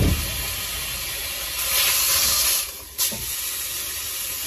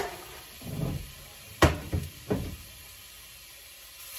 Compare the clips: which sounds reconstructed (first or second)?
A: second